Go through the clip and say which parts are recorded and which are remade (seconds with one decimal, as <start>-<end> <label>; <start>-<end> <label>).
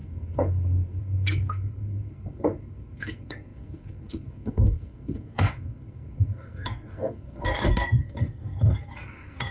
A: 0.0-9.5 remade